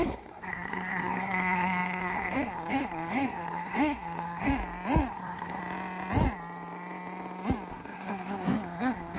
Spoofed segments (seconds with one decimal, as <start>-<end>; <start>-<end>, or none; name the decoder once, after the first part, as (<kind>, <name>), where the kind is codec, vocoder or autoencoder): 0.0-4.5 (codec, SNAC); 5.1-5.6; 7.7-9.2